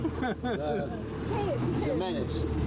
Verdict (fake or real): real